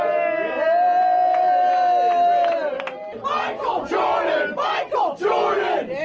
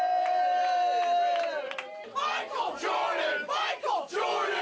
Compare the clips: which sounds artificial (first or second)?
second